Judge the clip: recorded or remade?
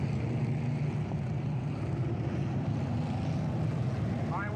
recorded